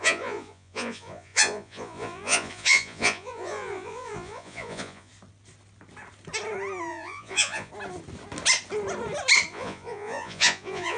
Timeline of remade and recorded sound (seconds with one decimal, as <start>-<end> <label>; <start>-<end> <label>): 0.0-5.1 remade; 5.1-6.9 recorded; 6.9-7.7 remade; 7.7-9.5 recorded; 9.5-11.0 remade